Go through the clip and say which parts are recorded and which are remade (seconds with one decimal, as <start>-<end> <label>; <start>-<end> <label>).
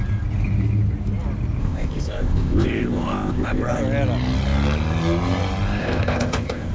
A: 0.0-1.6 recorded; 1.6-3.8 remade; 3.8-5.8 recorded; 5.8-6.7 remade